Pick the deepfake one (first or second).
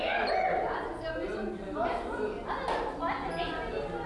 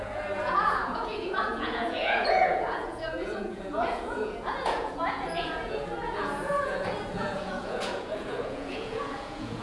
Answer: second